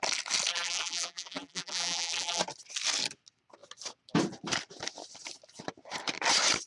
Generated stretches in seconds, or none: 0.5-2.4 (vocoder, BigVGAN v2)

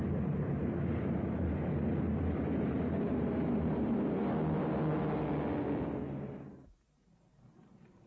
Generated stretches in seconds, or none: 0.0-4.2 (vocoder, BigVGAN v2); 5.9-8.1

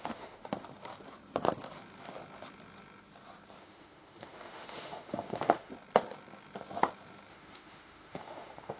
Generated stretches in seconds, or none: 0.0-0.4 (autoencoder, DAC-VAE); 3.6-5.7; 7.3-8.8

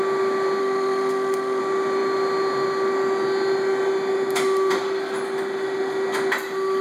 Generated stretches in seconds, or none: 0.6-1.6 (autoencoder, DAC-VAE)

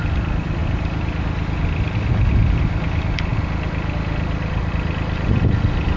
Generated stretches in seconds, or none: none